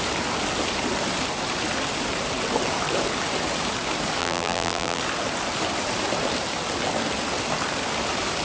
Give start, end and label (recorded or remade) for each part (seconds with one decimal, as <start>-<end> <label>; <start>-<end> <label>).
0.0-4.2 recorded; 4.2-5.0 remade; 5.0-8.4 recorded

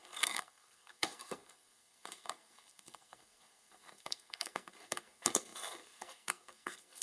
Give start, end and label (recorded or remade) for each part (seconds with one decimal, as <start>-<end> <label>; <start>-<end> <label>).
0.0-7.0 remade

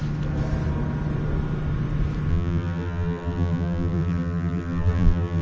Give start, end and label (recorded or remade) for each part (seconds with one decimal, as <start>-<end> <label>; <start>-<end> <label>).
0.0-2.3 recorded; 2.3-5.4 remade